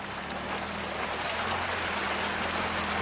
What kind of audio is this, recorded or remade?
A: recorded